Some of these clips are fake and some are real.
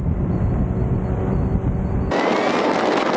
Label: real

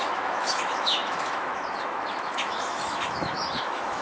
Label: fake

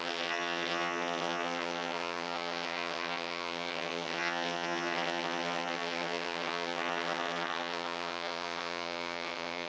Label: fake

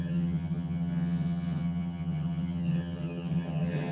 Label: fake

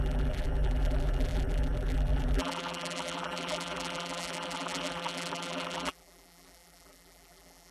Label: fake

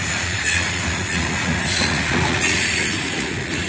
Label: fake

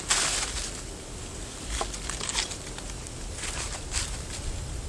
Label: real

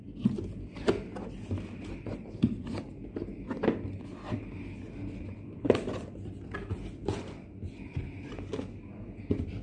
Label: real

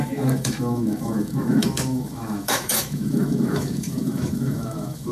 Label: fake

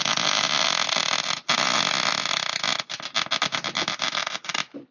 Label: real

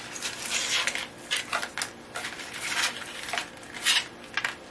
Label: real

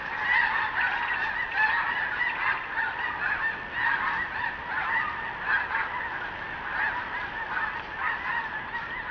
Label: real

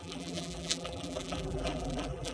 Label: fake